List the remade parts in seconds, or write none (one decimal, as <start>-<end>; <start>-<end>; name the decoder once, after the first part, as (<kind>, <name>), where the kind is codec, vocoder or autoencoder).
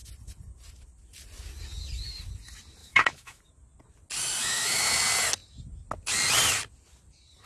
2.8-3.4 (autoencoder, DAC-VAE); 4.4-5.0